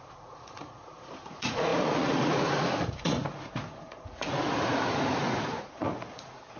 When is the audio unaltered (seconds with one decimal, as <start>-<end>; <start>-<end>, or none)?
none